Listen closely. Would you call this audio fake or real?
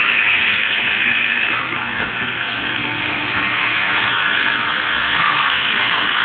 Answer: fake